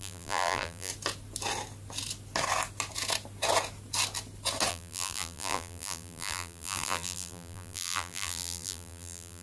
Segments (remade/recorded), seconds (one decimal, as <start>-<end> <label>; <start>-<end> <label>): 0.0-0.9 remade; 0.9-4.7 recorded; 4.7-9.4 remade